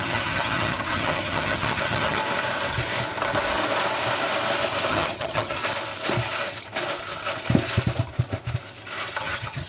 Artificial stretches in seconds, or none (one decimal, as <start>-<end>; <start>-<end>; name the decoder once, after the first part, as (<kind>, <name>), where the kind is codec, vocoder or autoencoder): 0.0-2.2 (vocoder, HiFi-GAN); 4.9-5.6; 9.2-9.7